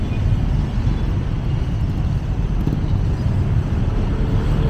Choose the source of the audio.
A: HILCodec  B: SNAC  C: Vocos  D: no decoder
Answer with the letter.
D